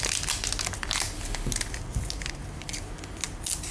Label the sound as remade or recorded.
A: recorded